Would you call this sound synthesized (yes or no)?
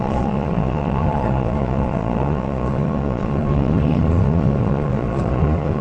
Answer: yes